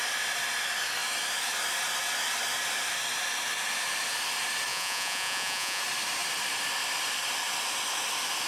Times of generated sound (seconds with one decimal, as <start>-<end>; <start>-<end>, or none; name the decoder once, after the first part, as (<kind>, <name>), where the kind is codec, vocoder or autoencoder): 4.7-5.8 (vocoder, Vocos)